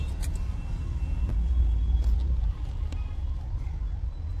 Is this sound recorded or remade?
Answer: recorded